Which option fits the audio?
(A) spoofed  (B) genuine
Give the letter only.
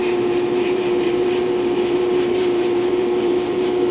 A